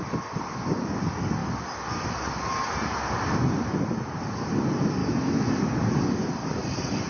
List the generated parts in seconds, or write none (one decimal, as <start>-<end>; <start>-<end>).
5.0-5.5

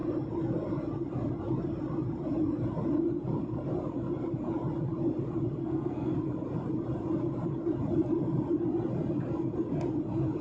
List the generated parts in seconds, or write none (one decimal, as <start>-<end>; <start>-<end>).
5.6-6.1

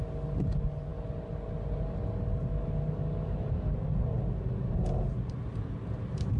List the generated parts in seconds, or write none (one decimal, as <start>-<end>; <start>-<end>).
none

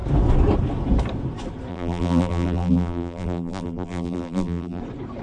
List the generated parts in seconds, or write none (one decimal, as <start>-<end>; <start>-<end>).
1.7-4.8

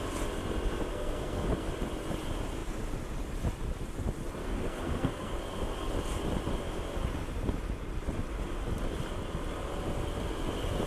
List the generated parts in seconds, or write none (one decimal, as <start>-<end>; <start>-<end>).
0.9-1.7; 4.4-5.3

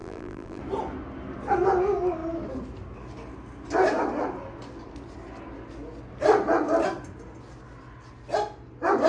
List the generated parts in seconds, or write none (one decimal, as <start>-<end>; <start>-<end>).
0.0-0.6